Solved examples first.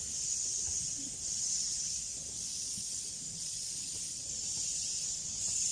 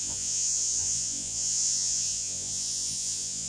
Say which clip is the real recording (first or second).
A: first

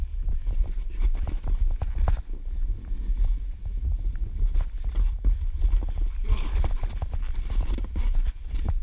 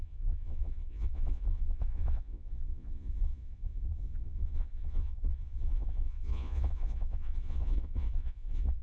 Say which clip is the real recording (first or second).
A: first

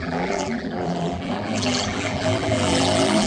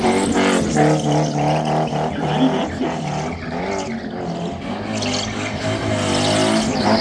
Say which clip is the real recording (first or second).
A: second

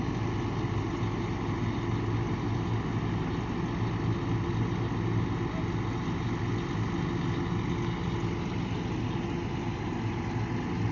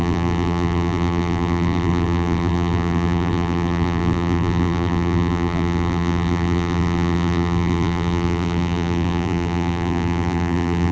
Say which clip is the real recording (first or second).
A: first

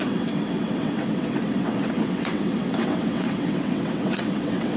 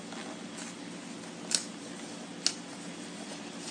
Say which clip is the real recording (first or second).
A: second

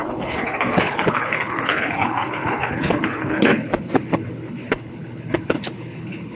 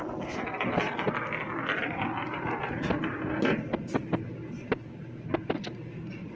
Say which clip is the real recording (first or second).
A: second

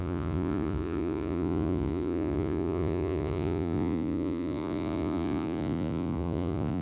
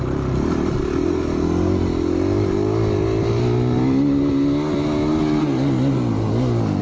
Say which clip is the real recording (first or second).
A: second